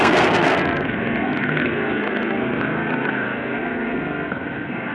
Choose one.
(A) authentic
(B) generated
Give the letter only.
B